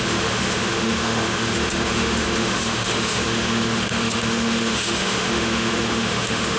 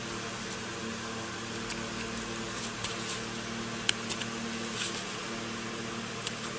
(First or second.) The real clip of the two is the second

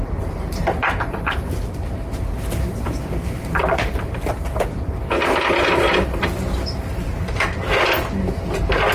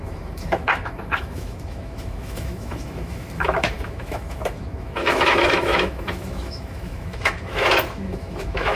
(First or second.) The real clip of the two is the first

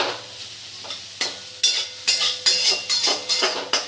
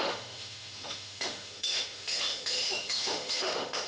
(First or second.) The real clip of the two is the first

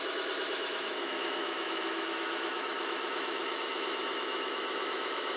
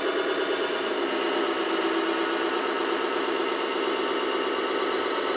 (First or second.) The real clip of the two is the second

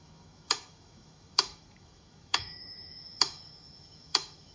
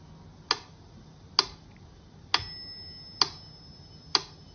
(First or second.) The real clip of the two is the second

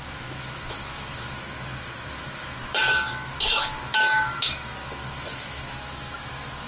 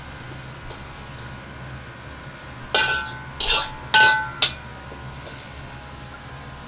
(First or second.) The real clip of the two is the second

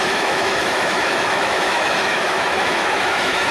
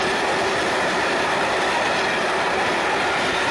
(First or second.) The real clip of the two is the second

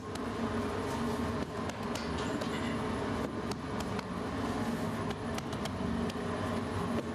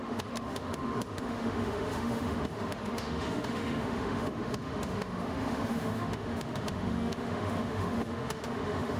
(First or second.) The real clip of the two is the first